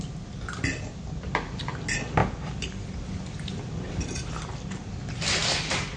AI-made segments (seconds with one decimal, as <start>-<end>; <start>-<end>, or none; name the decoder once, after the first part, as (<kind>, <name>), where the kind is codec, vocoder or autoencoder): none